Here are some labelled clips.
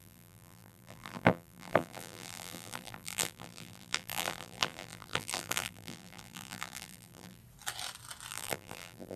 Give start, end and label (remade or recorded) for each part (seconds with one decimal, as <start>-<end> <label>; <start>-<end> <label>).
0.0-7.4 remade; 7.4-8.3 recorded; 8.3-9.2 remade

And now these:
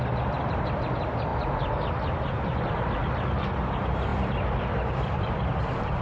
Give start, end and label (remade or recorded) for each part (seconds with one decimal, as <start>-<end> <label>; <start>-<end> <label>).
0.0-6.0 recorded

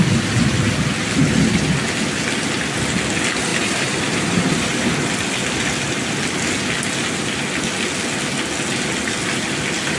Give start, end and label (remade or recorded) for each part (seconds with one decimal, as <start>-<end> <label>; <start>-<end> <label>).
0.0-3.5 recorded; 3.5-5.1 remade; 5.1-10.0 recorded

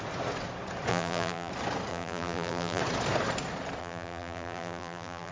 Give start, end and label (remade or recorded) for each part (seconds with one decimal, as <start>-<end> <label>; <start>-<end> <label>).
0.0-0.9 recorded; 0.9-1.5 remade; 1.5-1.9 recorded; 1.9-2.8 remade; 2.8-3.8 recorded; 3.8-5.3 remade

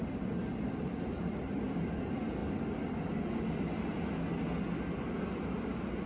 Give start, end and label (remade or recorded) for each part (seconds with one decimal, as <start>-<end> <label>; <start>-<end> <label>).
0.0-6.1 recorded